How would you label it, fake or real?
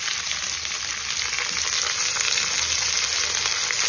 real